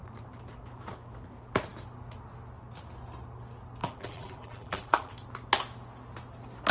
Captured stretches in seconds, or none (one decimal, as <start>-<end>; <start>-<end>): 0.0-3.8; 5.1-6.7